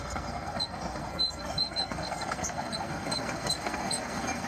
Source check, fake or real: fake